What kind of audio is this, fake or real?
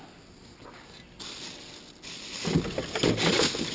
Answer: real